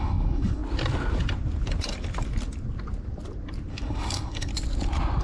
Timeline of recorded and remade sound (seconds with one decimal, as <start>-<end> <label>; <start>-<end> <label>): 0.0-0.6 remade; 0.6-3.7 recorded; 3.7-4.5 remade; 4.5-5.2 recorded